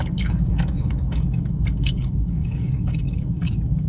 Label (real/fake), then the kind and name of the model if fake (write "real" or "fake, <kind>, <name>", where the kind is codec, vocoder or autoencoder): fake, codec, DAC